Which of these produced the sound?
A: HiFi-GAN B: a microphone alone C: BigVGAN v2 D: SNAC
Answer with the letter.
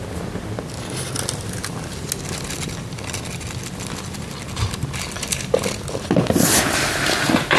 B